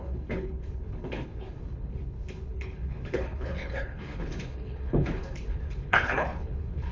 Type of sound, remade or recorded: remade